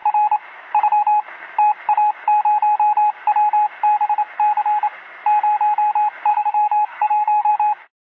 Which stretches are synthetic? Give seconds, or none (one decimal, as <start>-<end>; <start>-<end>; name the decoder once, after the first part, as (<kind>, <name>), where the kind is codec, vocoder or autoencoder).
6.3-7.5 (codec, SNAC)